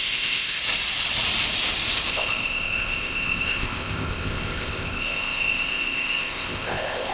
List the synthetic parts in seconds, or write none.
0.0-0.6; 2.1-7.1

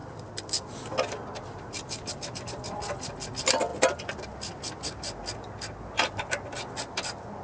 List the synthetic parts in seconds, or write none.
none

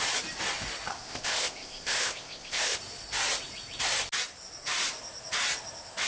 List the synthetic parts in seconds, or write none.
0.9-2.8

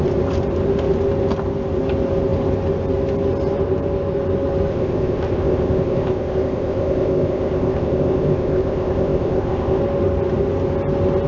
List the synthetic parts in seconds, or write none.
4.7-9.8

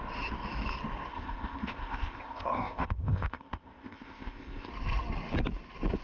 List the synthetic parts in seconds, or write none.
1.1-4.7

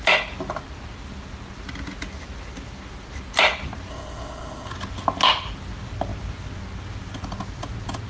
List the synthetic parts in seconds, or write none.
3.9-4.7